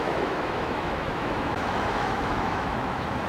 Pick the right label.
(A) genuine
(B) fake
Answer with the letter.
B